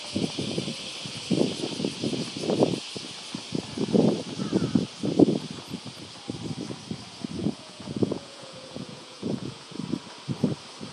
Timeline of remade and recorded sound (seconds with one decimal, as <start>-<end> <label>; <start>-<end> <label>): 0.0-7.4 recorded; 7.4-9.8 remade; 9.8-10.9 recorded